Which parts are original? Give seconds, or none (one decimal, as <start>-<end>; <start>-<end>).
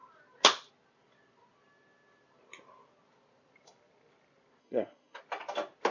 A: 0.0-4.6; 5.2-5.9